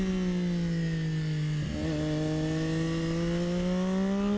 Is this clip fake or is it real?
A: real